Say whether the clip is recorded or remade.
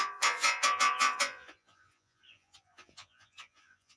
remade